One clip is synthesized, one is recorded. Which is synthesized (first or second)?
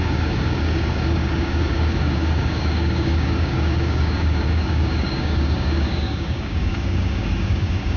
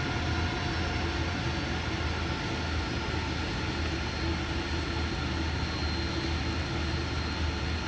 first